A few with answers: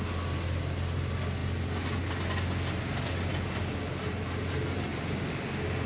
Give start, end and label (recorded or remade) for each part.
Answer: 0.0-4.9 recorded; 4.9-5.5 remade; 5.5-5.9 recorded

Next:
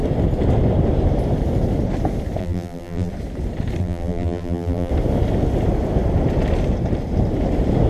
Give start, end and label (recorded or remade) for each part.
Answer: 0.0-2.4 recorded; 2.4-3.1 remade; 3.1-3.8 recorded; 3.8-4.9 remade; 4.9-7.9 recorded

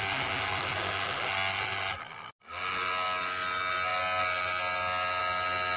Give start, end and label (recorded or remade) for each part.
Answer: 0.0-5.8 recorded

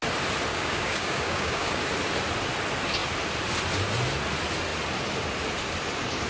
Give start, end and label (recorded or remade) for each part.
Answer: 0.0-0.5 recorded; 0.5-1.8 remade; 1.8-6.3 recorded

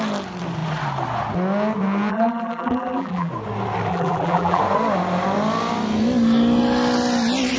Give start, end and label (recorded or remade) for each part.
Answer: 0.0-2.1 recorded; 2.1-3.3 remade; 3.3-3.9 recorded; 3.9-4.6 remade; 4.6-7.6 recorded

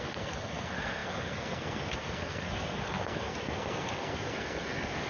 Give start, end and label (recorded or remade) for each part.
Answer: 0.0-5.1 remade

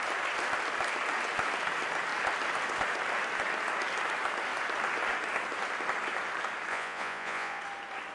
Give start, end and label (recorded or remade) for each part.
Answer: 0.0-6.7 recorded; 6.7-7.6 remade; 7.6-8.1 recorded

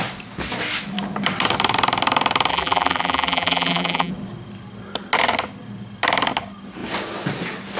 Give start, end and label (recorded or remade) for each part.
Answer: 0.0-2.5 recorded; 2.5-4.1 remade; 4.1-7.8 recorded